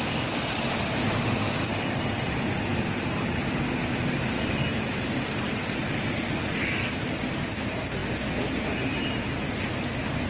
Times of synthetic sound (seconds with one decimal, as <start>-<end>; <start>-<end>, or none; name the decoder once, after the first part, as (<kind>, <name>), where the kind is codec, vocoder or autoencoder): none